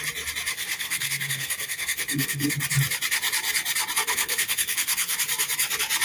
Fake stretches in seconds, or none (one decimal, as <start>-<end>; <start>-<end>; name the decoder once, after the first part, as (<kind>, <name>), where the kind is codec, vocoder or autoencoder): 0.5-2.5 (codec, SNAC); 4.0-5.2